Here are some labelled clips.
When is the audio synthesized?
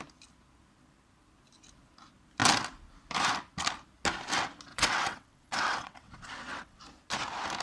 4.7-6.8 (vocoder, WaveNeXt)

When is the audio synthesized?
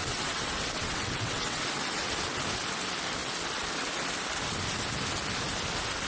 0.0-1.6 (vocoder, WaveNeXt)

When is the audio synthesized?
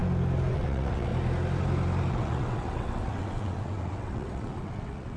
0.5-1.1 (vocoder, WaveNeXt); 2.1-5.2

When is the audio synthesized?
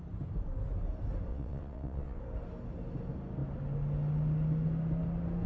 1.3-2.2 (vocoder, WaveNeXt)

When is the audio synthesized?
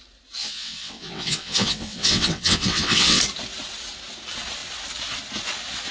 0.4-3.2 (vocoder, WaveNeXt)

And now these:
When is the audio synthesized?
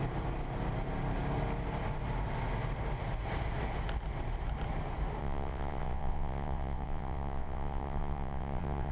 5.2-8.9 (vocoder, WaveNeXt)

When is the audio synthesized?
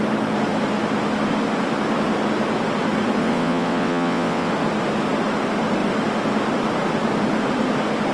3.2-4.5 (vocoder, WaveNeXt)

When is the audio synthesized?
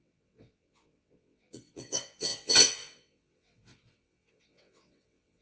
0.0-5.4 (vocoder, WaveNeXt)